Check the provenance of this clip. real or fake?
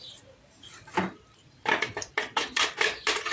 fake